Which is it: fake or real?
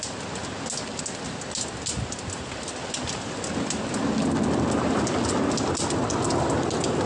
real